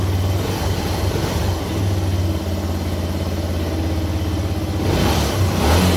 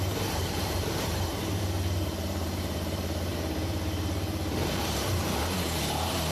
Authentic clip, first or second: first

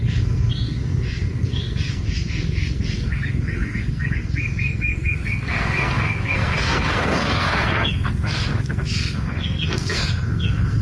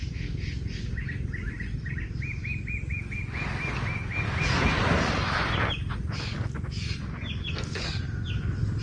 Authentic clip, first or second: second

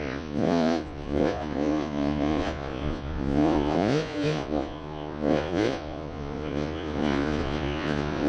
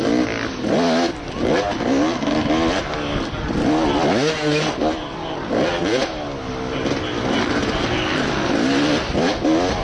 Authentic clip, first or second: second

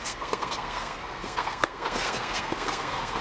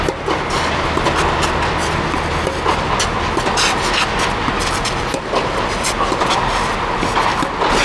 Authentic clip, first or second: second